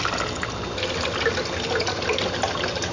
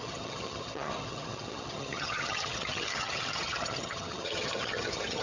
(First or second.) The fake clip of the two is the second